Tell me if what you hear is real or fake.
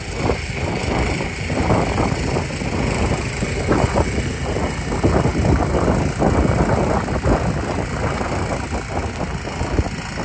real